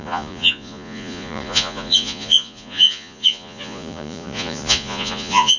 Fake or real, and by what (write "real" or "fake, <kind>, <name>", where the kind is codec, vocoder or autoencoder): fake, vocoder, Vocos